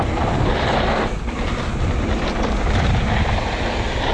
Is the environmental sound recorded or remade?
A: recorded